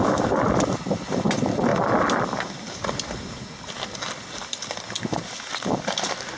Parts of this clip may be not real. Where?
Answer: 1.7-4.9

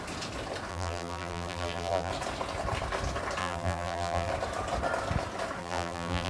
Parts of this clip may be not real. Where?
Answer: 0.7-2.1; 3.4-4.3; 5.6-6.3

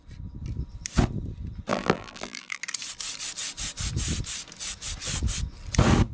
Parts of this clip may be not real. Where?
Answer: 1.7-2.6

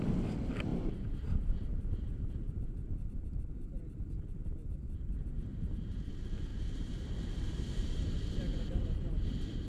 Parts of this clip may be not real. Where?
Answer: 0.7-2.9; 5.5-6.1; 6.5-8.2

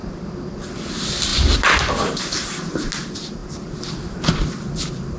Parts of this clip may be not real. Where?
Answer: 0.0-0.9; 3.4-4.2

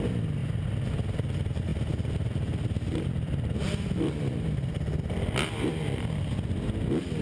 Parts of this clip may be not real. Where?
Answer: 0.4-0.9; 1.7-6.0